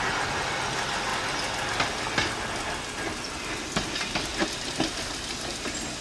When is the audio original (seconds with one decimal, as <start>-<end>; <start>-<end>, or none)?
0.0-6.0